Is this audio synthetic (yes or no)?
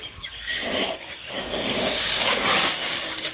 yes